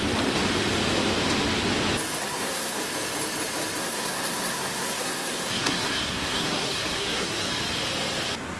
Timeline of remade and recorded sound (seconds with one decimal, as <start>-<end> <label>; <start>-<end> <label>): 0.0-2.2 recorded; 2.2-2.8 remade; 2.8-3.8 recorded; 3.8-7.5 remade; 7.5-8.6 recorded